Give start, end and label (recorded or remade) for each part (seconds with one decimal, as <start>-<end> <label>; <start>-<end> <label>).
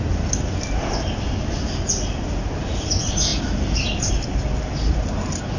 0.0-5.6 recorded